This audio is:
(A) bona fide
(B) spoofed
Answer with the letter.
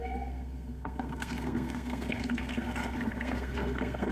B